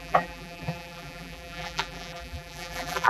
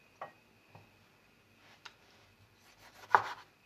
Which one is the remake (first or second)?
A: first